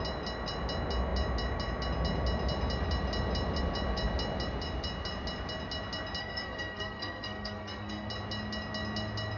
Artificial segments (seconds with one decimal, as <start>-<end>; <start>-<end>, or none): 6.2-8.1